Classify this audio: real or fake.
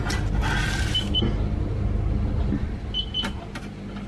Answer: real